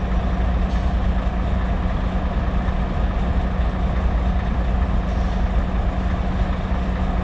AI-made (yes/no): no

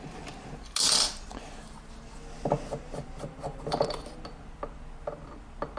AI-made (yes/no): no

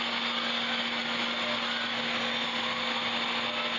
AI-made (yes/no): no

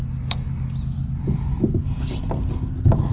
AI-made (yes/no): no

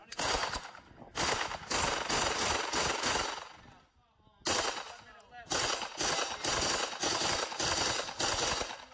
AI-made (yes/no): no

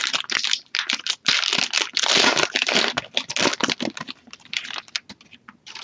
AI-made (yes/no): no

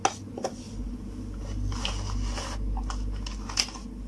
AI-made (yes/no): no